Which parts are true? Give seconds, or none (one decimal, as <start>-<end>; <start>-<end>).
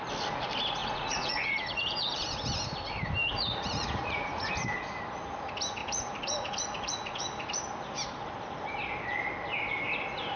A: 0.0-0.8; 2.2-3.2; 4.5-5.8; 7.6-10.4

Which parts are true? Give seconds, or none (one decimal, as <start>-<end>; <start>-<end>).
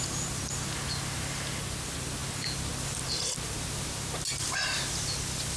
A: 0.0-5.6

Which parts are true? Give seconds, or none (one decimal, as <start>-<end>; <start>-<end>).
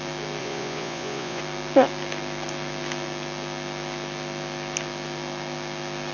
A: 0.0-0.4; 1.4-6.1